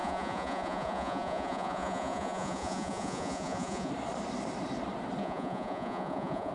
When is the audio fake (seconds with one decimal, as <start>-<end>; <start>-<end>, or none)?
0.0-3.9; 5.2-6.5